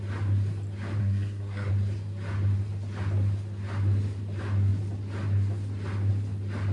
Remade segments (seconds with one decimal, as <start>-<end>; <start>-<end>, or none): 1.0-1.7